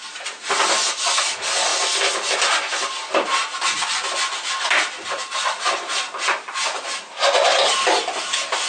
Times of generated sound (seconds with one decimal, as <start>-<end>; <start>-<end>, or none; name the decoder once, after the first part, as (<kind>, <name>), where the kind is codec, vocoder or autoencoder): none